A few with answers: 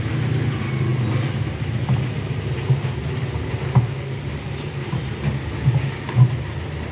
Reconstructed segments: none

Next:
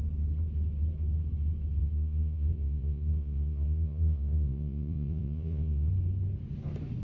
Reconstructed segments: 1.8-5.9 (vocoder, Vocos)

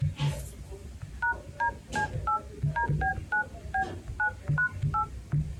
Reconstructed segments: none

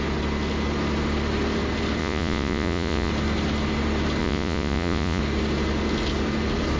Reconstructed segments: 2.0-3.1 (vocoder, Vocos); 4.2-5.2

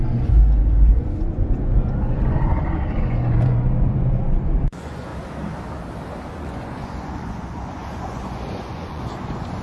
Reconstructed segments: 0.0-5.1 (vocoder, Vocos); 6.3-9.6